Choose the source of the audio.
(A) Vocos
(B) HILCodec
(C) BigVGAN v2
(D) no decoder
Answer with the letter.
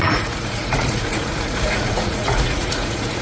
A